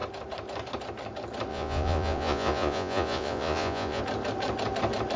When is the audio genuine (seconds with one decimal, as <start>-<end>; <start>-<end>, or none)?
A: 0.0-1.5; 4.0-5.2